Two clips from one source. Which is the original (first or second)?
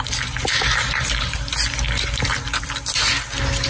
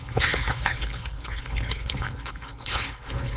first